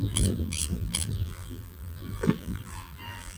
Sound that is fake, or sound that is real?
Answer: fake